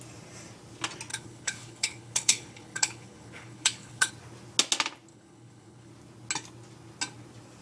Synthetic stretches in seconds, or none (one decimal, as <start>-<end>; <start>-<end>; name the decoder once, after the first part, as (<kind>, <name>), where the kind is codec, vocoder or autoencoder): 1.1-4.1 (codec, HILCodec); 5.1-5.9